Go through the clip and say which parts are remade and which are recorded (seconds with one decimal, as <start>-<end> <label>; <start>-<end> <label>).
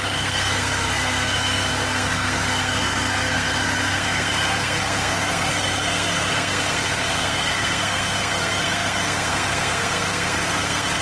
0.0-11.0 remade